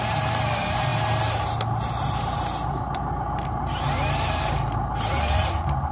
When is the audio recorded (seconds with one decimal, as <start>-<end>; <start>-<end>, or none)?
0.0-5.9